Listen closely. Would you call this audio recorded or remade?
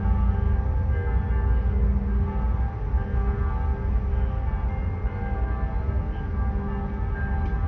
recorded